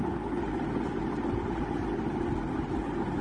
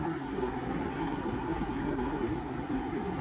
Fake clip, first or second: second